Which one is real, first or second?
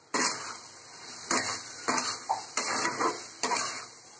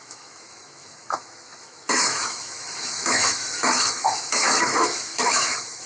first